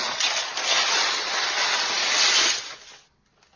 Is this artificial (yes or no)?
no